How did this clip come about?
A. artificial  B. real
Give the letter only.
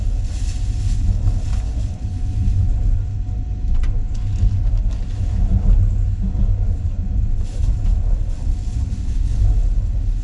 B